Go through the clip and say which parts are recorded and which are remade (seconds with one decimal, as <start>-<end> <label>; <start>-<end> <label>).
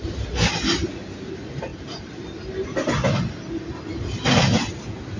0.0-5.2 recorded